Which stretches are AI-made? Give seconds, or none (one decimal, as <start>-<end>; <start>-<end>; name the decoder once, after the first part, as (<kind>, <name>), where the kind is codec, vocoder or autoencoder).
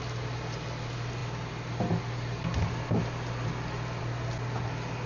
none